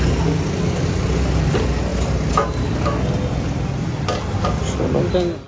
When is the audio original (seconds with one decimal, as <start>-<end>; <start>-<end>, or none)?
0.0-5.5